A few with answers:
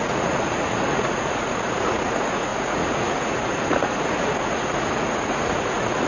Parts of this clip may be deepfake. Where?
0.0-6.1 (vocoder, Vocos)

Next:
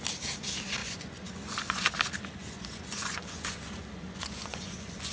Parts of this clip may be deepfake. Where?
0.8-1.9 (vocoder, Vocos); 2.4-5.1

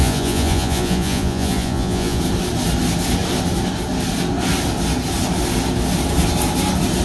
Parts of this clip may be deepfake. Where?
0.0-2.2 (vocoder, Vocos)

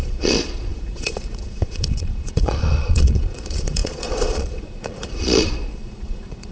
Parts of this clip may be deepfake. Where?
0.0-6.5 (vocoder, Vocos)